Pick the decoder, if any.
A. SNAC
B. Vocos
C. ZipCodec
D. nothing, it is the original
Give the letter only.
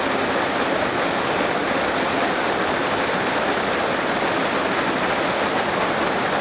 D